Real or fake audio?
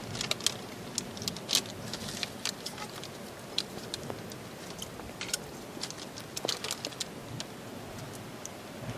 real